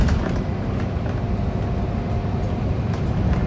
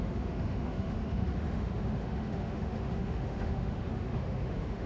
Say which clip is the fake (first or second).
second